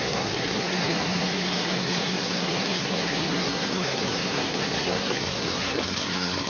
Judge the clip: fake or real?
fake